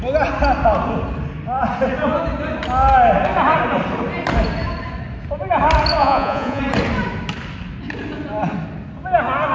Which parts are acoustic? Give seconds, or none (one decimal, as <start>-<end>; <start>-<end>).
0.0-6.0; 6.6-9.5